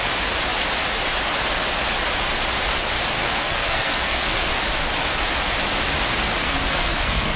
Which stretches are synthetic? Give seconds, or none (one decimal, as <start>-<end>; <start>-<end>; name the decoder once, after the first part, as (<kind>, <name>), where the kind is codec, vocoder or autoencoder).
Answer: 3.2-4.5 (codec, SNAC); 6.4-7.4